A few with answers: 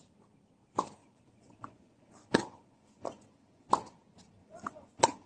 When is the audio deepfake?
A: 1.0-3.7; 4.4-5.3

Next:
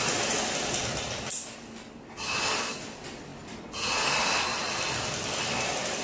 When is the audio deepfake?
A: 4.5-5.1

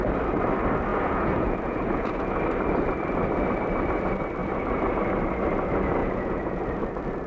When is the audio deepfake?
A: 0.9-2.3; 6.0-6.6

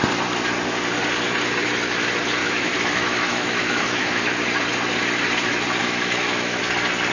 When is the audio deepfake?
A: 2.4-4.2; 5.8-6.6

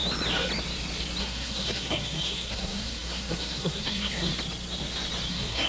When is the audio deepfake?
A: 1.2-4.3; 5.3-5.7

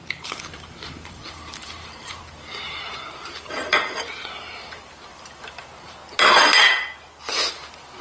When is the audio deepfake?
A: 0.0-6.0; 7.5-8.0

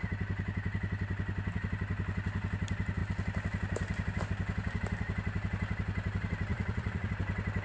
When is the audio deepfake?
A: 6.5-7.1